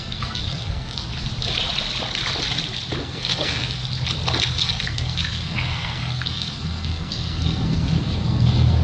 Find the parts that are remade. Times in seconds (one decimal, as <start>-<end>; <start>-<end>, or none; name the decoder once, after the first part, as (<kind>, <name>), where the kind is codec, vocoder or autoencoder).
0.0-1.1 (codec, SNAC); 3.0-3.8; 4.5-8.8